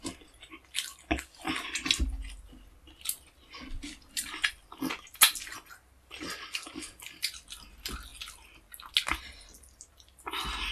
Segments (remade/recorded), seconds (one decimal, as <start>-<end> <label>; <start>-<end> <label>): 0.0-10.7 recorded